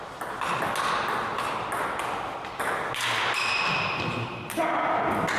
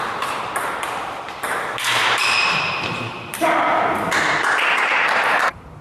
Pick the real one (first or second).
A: first